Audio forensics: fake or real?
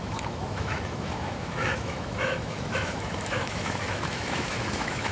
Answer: fake